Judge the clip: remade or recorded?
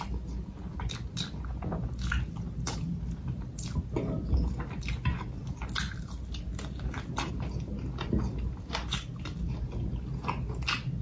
recorded